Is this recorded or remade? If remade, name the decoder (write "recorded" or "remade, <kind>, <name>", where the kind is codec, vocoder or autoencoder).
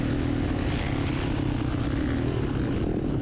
recorded